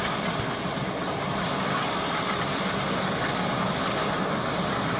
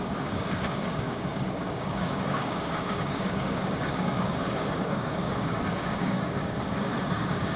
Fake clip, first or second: second